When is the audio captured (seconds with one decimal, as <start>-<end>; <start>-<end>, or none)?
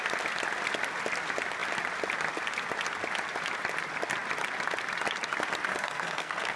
0.0-5.7